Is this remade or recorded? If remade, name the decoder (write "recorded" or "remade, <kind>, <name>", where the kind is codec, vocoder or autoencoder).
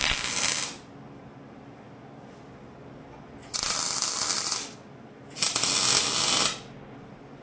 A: recorded